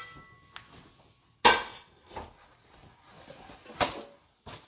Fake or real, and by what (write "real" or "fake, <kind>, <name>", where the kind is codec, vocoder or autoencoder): real